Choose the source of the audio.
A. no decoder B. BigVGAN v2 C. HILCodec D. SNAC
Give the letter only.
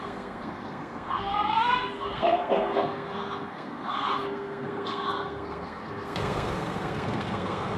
D